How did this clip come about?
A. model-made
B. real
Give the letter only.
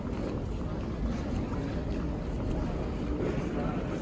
B